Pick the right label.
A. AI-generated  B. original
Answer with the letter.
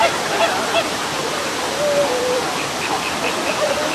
A